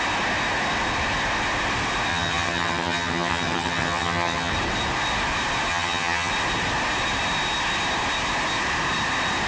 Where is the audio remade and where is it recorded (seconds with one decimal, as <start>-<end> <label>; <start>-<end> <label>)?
0.0-2.1 recorded; 2.1-4.5 remade; 4.5-5.7 recorded; 5.7-6.3 remade; 6.3-9.5 recorded